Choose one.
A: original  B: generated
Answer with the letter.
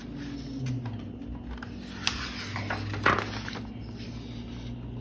A